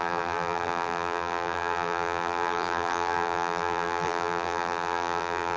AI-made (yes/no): yes